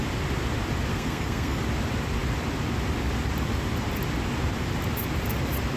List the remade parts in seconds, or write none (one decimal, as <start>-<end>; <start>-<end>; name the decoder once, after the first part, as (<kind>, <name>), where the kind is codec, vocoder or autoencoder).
0.9-1.6 (codec, SNAC)